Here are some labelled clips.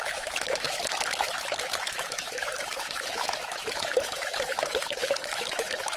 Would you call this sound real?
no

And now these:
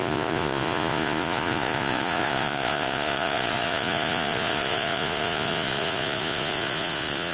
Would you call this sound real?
no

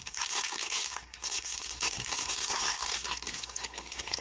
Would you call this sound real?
no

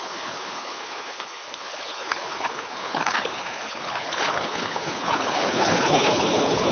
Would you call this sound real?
no